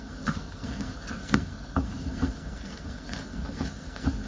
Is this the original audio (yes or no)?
no